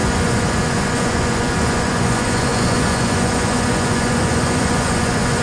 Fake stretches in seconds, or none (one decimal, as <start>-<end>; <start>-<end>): 0.0-5.4